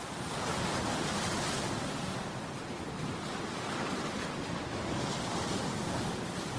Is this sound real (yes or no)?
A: yes